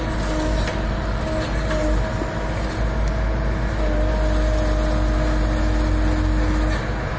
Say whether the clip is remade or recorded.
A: recorded